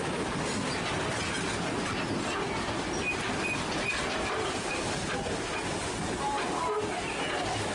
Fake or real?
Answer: real